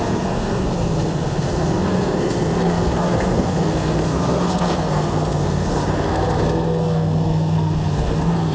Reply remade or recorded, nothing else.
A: remade